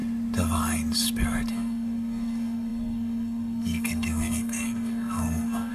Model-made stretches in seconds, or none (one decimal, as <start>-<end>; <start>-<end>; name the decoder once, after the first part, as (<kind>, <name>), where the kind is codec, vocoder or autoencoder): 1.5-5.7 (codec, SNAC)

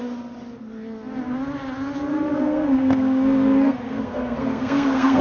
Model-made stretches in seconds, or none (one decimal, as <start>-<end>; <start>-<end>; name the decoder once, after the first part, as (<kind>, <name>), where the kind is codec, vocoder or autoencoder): 2.1-5.2 (codec, SNAC)

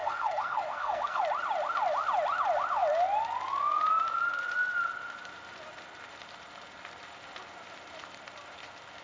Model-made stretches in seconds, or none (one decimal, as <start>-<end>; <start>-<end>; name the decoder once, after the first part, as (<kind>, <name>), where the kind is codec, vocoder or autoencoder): 0.0-1.2 (codec, SNAC)